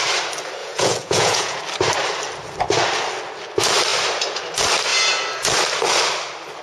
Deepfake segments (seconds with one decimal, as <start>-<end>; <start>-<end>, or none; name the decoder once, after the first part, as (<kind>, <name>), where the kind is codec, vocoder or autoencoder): 0.6-1.6 (vocoder, Vocos)